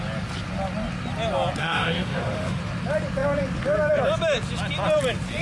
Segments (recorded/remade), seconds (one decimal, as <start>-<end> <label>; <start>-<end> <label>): 0.0-1.6 recorded; 1.6-2.6 remade; 2.6-5.4 recorded